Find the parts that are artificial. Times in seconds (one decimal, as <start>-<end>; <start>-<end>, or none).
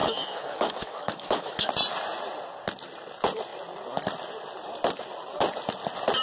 0.0-1.7